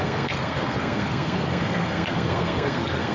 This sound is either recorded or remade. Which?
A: remade